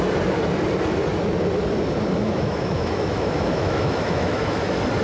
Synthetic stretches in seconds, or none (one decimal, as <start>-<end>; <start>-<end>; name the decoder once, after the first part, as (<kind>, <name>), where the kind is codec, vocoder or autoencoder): 2.2-4.6 (autoencoder, DAC-VAE)